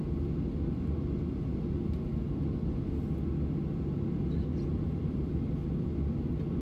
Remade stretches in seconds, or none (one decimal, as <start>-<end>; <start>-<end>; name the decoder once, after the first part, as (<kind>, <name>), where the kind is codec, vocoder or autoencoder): 4.5-5.3 (vocoder, BigVGAN v2)